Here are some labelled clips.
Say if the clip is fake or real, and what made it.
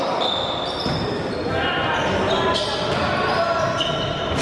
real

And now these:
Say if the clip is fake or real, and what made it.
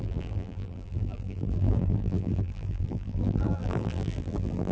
fake, vocoder, BigVGAN v2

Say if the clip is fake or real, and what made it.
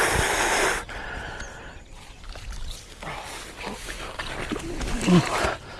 fake, vocoder, BigVGAN v2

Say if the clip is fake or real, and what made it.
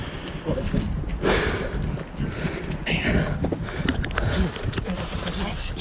real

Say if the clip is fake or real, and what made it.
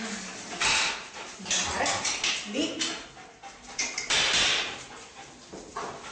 real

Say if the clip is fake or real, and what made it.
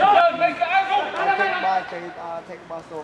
real